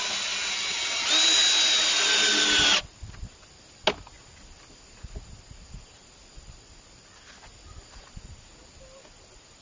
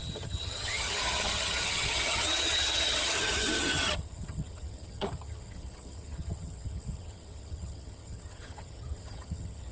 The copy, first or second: second